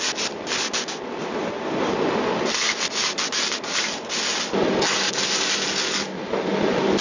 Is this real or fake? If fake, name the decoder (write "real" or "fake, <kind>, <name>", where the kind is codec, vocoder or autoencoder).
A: real